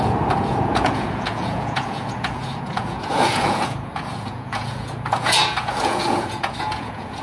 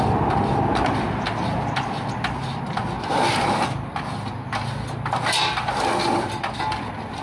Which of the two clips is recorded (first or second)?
second